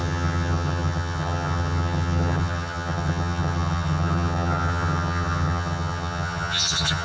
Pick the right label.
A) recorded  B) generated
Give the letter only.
B